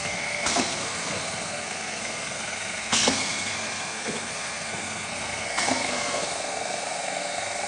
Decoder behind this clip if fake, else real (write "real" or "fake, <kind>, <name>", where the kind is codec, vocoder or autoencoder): fake, codec, SNAC